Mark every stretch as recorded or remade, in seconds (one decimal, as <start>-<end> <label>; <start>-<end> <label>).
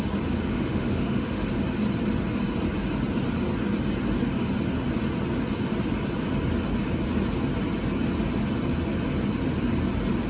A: 0.0-0.5 recorded; 0.5-1.5 remade; 1.5-10.3 recorded